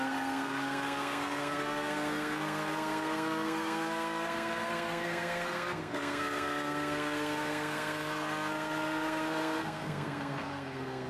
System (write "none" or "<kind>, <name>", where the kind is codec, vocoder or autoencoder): codec, SNAC